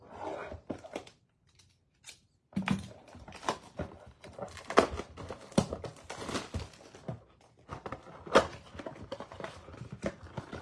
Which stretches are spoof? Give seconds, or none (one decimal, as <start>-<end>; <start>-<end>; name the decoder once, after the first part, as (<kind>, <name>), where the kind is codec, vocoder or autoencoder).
none